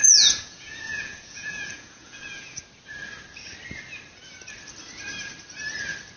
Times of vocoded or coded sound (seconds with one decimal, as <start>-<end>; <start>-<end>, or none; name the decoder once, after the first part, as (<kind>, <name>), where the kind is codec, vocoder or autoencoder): 0.0-2.6 (vocoder, Vocos)